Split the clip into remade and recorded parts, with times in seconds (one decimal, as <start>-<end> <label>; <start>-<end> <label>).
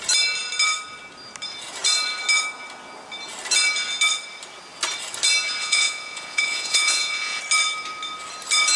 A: 0.0-5.6 recorded; 5.6-7.4 remade; 7.4-8.8 recorded